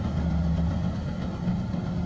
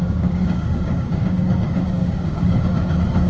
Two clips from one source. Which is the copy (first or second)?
second